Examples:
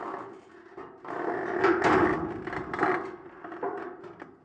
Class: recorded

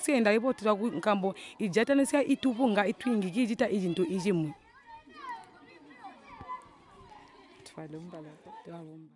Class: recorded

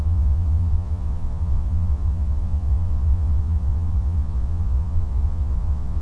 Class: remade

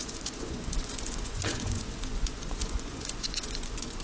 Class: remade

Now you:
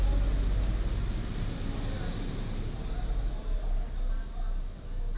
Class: recorded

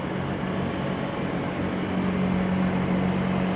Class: recorded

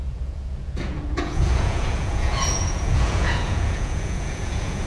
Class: remade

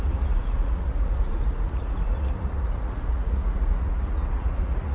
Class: remade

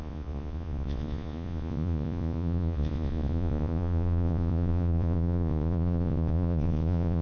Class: remade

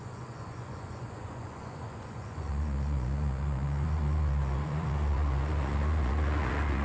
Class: remade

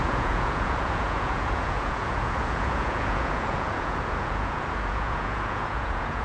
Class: remade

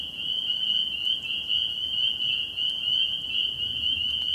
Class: remade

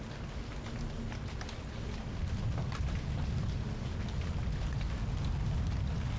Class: recorded